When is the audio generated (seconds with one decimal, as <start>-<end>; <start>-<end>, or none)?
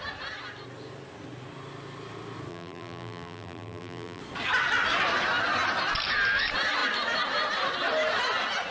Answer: 2.5-4.2